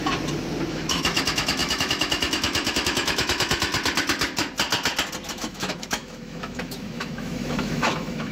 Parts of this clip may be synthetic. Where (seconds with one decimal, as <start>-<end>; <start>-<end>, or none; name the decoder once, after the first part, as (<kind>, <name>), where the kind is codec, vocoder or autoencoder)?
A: 0.7-3.7 (autoencoder, DAC-VAE); 5.3-8.3